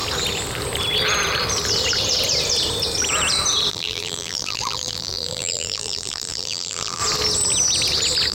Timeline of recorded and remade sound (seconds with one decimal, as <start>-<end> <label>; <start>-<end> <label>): 0.0-3.7 recorded; 3.7-7.0 remade; 7.0-8.3 recorded